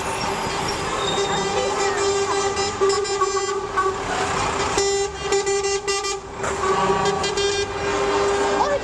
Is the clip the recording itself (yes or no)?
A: yes